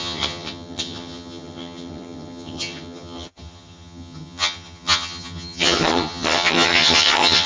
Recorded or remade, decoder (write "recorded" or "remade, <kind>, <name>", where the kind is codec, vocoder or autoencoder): remade, vocoder, HiFi-GAN